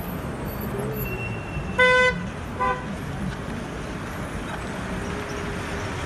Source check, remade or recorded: recorded